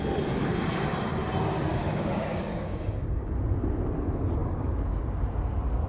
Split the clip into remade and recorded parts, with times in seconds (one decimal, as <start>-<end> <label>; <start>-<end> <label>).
0.0-1.7 recorded; 1.7-3.3 remade; 3.3-5.9 recorded